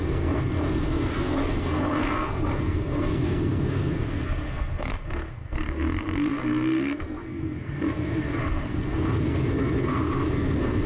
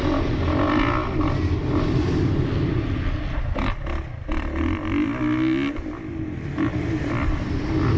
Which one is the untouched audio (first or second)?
second